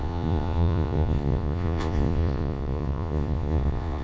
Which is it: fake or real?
fake